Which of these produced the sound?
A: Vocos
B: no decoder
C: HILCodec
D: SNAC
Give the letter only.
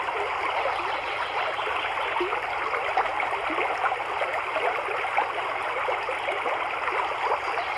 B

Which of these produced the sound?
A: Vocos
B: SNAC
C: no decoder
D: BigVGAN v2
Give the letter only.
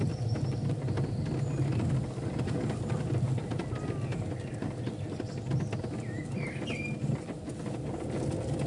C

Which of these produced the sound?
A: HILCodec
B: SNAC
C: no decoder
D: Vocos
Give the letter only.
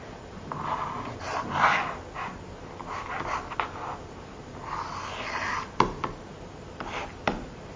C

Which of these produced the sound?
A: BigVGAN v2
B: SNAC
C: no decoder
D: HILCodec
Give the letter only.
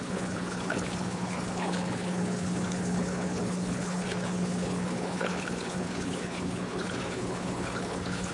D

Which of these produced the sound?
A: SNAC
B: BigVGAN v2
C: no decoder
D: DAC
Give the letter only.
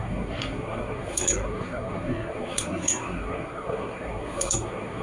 A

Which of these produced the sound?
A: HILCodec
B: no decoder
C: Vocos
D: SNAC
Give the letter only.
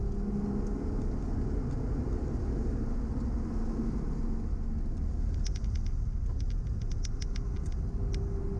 B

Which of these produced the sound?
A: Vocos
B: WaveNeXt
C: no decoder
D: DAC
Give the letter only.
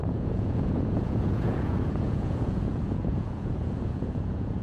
A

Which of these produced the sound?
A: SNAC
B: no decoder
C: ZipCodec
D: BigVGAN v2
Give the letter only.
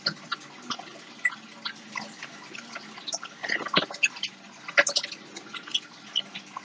B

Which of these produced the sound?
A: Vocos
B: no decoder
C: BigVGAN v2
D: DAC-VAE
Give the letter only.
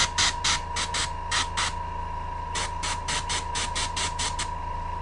B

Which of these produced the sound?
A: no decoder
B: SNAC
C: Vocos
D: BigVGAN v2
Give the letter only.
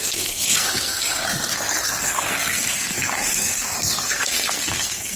B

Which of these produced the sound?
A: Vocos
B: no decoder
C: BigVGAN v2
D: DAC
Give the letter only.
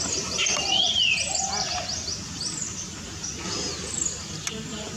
B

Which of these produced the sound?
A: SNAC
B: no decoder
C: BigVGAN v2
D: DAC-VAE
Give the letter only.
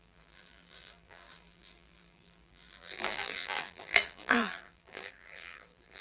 C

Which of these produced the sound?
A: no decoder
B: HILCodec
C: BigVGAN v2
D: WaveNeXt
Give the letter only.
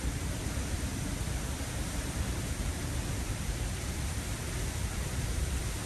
C